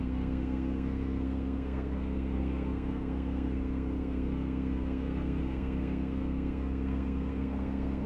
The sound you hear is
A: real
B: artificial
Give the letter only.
B